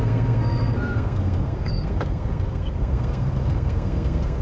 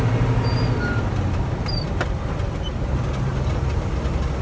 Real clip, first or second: second